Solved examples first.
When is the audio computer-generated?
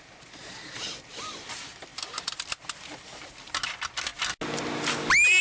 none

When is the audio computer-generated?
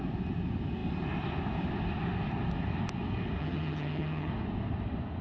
3.4-4.3 (vocoder, HiFi-GAN)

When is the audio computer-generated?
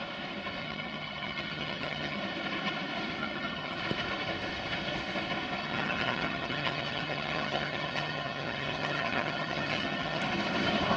0.6-2.2 (vocoder, HiFi-GAN); 3.2-3.8; 5.6-10.2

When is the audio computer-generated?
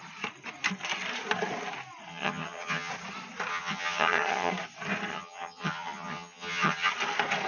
2.1-2.9 (vocoder, HiFi-GAN); 3.5-4.5; 5.1-6.9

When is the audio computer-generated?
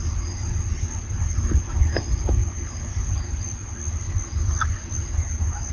none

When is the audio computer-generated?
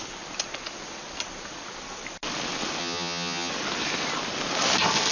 2.8-3.5 (vocoder, HiFi-GAN)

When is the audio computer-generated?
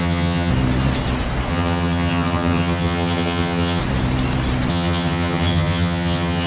0.0-0.5 (vocoder, HiFi-GAN); 1.5-3.8; 4.7-6.5